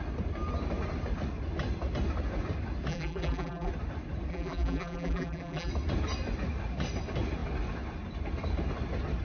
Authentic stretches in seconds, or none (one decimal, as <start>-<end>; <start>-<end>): 0.0-2.9; 3.7-4.3; 5.7-9.2